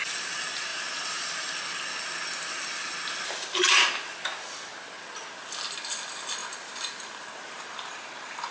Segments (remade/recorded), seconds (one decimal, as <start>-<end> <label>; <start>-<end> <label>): 0.0-8.5 recorded